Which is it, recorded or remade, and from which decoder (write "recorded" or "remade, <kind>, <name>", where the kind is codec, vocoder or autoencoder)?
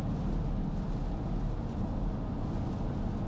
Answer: recorded